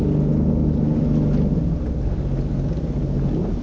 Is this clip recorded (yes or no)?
yes